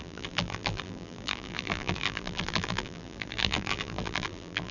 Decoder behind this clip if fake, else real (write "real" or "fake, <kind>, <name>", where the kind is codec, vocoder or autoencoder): fake, vocoder, BigVGAN v2